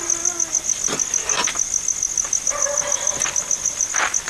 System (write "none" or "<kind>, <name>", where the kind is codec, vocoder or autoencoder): none